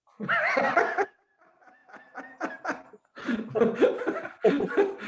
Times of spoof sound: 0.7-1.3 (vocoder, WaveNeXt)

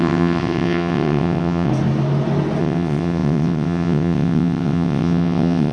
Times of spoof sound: 0.0-1.7 (vocoder, WaveNeXt); 2.6-5.7

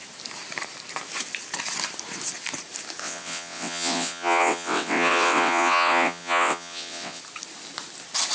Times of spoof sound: 3.0-7.2 (vocoder, WaveNeXt)

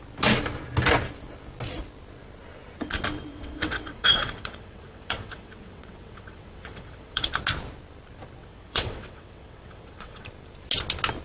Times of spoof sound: 3.3-7.4 (vocoder, WaveNeXt); 8.4-10.2

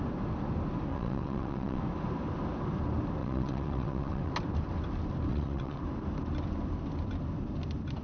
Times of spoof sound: 0.9-1.8 (vocoder, WaveNeXt); 3.2-4.3; 5.3-5.8

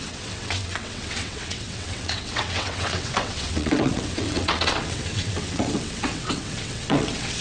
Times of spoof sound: 0.0-7.4 (vocoder, WaveNeXt)

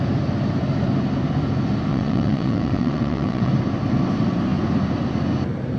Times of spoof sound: 1.9-3.5 (vocoder, WaveNeXt)